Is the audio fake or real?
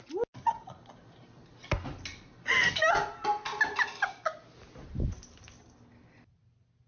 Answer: real